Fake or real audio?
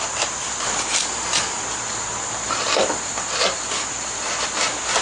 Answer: real